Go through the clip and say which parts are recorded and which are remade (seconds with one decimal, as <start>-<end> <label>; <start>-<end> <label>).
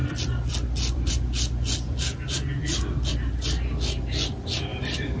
0.0-1.1 remade; 1.1-4.7 recorded; 4.7-5.2 remade